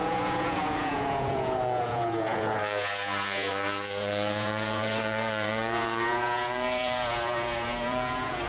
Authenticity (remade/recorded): remade